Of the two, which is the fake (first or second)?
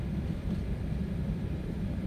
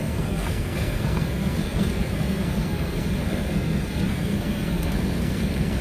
second